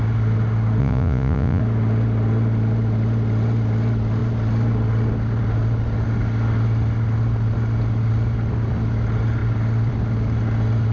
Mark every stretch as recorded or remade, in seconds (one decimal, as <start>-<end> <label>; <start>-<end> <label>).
0.0-0.8 recorded; 0.8-1.6 remade; 1.6-10.9 recorded

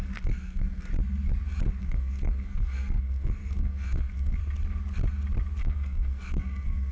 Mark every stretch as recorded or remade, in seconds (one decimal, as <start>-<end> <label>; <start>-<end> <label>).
0.0-0.9 remade; 0.9-1.8 recorded; 1.8-4.4 remade; 4.4-5.6 recorded; 5.6-6.9 remade

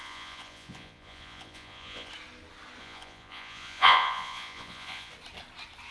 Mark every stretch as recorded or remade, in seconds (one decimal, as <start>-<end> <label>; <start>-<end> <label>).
0.0-2.1 remade; 2.1-2.8 recorded; 2.8-5.1 remade; 5.1-5.9 recorded